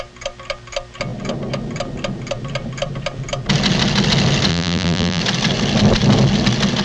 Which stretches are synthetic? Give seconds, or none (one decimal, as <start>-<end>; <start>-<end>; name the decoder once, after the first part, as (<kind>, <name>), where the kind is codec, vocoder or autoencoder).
4.5-5.2 (vocoder, BigVGAN v2)

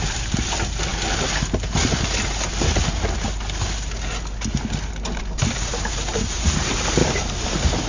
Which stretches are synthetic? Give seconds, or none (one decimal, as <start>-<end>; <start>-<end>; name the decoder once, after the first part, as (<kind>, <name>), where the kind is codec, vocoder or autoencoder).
0.0-0.9 (vocoder, BigVGAN v2); 5.4-7.9